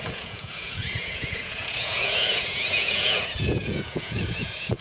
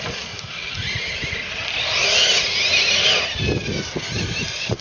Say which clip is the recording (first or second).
second